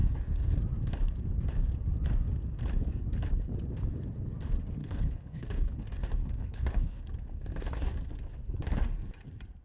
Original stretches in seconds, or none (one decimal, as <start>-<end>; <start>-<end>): 0.0-4.8; 5.8-6.2; 7.0-9.6